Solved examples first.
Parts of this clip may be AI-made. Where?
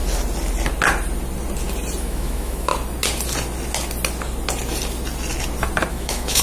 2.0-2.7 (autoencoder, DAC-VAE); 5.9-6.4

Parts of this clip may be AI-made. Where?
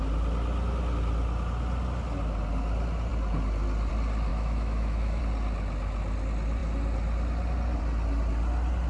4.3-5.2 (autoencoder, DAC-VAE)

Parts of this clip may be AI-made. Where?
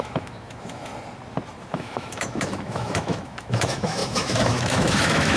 0.0-0.9 (autoencoder, DAC-VAE); 1.6-5.4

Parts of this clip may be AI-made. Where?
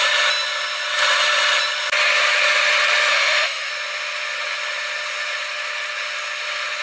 3.1-3.7 (autoencoder, DAC-VAE)